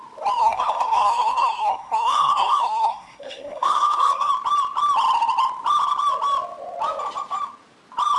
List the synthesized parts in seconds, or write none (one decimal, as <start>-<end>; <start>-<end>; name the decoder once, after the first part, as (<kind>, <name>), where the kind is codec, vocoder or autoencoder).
0.4-4.3 (codec, SNAC)